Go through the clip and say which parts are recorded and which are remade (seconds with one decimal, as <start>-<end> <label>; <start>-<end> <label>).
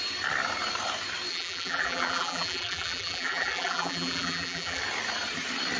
0.0-1.3 recorded; 1.3-4.8 remade; 4.8-5.8 recorded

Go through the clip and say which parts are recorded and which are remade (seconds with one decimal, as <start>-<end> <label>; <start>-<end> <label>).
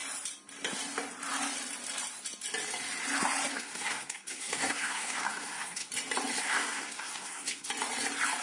0.0-3.5 recorded; 3.5-5.9 remade; 5.9-6.4 recorded; 6.4-7.7 remade; 7.7-8.4 recorded